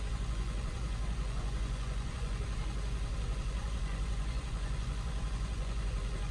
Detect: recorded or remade remade